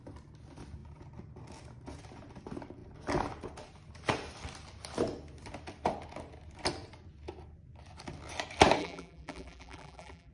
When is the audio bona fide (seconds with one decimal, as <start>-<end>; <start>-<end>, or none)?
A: 0.0-8.8

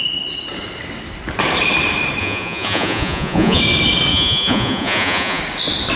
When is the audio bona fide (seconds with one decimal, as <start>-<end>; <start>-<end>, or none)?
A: 0.0-2.2; 3.6-4.1; 5.4-6.0